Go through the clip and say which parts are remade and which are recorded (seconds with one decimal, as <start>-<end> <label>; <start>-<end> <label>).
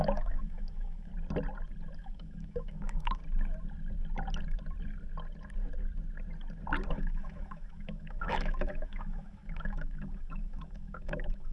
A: 0.0-1.1 remade; 1.1-2.0 recorded; 2.0-3.2 remade; 3.2-6.9 recorded; 6.9-11.5 remade